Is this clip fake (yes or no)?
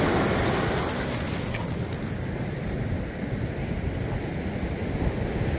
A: no